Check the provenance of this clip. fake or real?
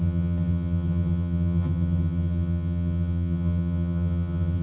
fake